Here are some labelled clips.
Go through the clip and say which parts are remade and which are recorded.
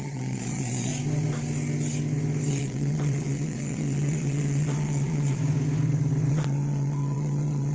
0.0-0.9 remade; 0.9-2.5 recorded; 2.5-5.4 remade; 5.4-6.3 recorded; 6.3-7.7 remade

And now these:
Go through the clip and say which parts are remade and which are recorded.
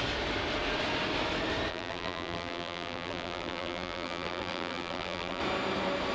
0.0-1.7 recorded; 1.7-5.4 remade; 5.4-6.1 recorded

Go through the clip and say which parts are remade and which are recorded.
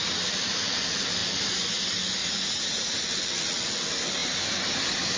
0.0-2.2 recorded; 2.2-3.0 remade; 3.0-5.2 recorded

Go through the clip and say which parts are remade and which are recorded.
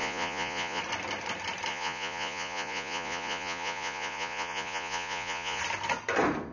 0.0-0.8 remade; 0.8-1.7 recorded; 1.7-5.6 remade; 5.6-6.5 recorded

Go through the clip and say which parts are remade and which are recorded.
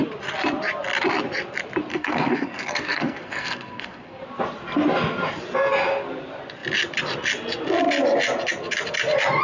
0.0-1.9 recorded; 1.9-4.2 remade; 4.2-9.4 recorded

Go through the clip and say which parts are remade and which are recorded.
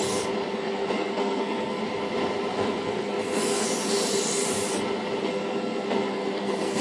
0.0-0.5 recorded; 0.5-1.8 remade; 1.8-2.5 recorded; 2.5-3.7 remade; 3.7-5.2 recorded; 5.2-6.8 remade